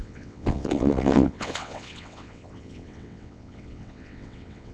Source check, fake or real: fake